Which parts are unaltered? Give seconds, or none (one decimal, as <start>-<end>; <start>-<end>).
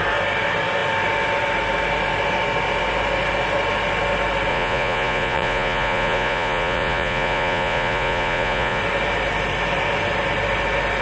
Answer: 0.0-4.5; 8.8-11.0